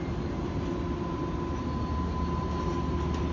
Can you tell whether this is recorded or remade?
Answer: recorded